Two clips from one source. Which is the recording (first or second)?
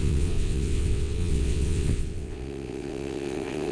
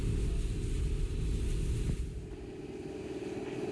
second